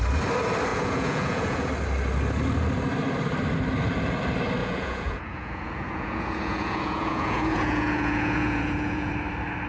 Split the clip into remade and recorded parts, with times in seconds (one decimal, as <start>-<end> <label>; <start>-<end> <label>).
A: 0.0-0.7 recorded; 0.7-1.7 remade; 1.7-4.6 recorded; 4.6-9.1 remade; 9.1-9.7 recorded